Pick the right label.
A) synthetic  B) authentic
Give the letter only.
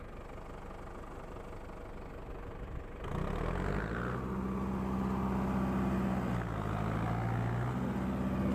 B